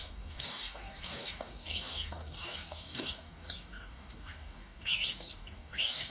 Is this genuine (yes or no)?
no